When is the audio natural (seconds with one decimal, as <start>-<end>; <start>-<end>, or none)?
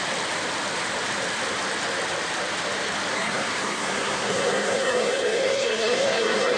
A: 0.0-3.1